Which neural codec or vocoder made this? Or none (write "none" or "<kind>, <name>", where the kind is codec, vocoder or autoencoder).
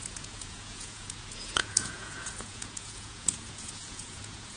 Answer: vocoder, Vocos